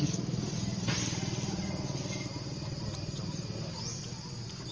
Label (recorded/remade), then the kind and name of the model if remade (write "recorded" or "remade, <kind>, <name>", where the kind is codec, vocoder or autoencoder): recorded